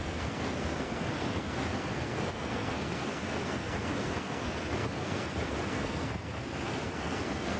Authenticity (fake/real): fake